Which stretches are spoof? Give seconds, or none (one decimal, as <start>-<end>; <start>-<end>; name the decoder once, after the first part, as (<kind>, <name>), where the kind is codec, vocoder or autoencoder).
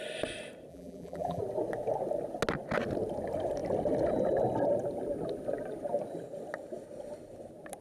0.7-1.4 (vocoder, BigVGAN v2)